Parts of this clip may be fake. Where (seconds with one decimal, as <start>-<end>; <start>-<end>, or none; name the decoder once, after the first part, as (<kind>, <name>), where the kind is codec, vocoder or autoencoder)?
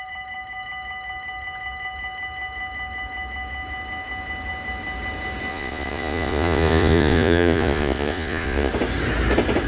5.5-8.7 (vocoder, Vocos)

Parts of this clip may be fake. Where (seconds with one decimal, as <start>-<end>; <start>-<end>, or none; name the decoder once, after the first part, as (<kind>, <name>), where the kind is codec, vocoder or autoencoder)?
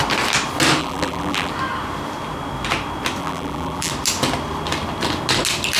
0.8-1.5 (vocoder, BigVGAN v2); 3.2-3.9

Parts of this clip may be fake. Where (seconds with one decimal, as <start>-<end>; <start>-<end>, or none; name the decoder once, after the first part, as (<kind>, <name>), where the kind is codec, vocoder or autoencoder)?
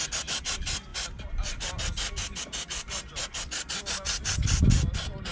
none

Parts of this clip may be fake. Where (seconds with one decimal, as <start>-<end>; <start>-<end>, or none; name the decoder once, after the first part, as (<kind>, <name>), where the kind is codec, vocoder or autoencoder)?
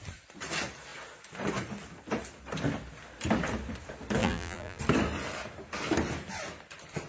4.2-4.8 (vocoder, BigVGAN v2)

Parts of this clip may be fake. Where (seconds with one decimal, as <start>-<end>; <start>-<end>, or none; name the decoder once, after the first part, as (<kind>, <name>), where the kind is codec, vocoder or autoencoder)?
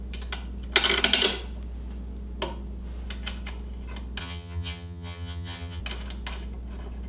4.2-5.8 (vocoder, HiFi-GAN)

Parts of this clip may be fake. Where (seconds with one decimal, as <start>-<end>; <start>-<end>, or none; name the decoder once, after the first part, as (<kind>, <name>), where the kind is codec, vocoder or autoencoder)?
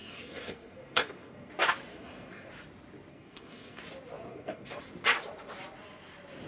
0.0-1.5 (codec, SNAC); 1.9-2.5; 3.1-3.8; 4.3-4.8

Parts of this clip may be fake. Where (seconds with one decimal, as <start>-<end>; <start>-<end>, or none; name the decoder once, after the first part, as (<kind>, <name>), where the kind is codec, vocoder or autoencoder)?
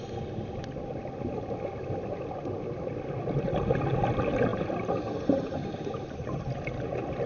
none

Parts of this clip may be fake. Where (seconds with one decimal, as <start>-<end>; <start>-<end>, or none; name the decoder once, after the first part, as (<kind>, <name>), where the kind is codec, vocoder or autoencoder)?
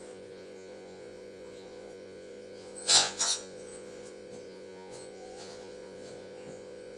0.0-7.0 (vocoder, Vocos)